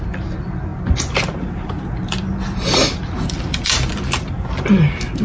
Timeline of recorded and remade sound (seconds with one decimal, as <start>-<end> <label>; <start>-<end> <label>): 0.0-5.2 recorded